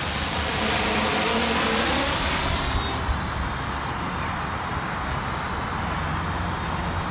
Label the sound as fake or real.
real